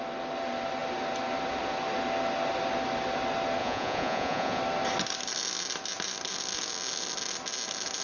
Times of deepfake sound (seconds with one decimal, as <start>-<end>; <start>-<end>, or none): 3.6-4.6